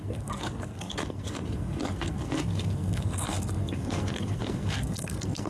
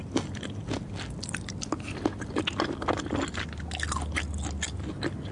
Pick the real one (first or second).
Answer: second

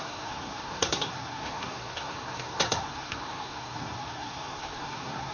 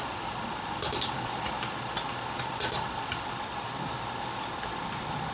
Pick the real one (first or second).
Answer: second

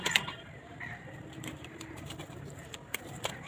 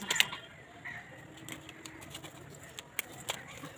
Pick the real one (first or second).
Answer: second